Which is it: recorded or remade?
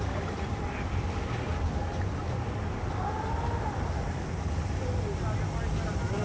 recorded